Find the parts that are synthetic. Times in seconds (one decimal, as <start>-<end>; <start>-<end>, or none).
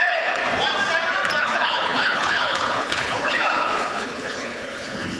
0.0-0.4; 1.4-5.2